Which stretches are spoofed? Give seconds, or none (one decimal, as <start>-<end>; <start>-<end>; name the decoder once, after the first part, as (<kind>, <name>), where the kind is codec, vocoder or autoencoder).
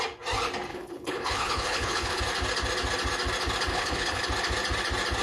0.7-2.2 (codec, HILCodec); 3.7-4.2